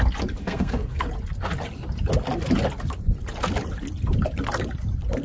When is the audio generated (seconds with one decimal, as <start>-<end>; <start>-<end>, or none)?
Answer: 0.4-1.1